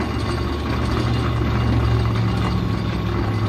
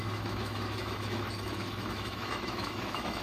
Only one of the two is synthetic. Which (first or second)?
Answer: second